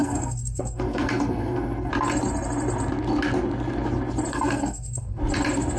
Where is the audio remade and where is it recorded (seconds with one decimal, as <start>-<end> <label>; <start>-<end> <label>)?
0.0-1.9 remade; 1.9-4.3 recorded; 4.3-5.2 remade; 5.2-5.8 recorded